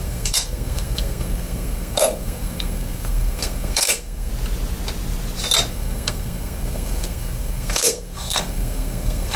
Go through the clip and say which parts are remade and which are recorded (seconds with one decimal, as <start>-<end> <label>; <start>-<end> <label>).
0.0-4.3 remade; 4.3-5.7 recorded; 5.7-9.4 remade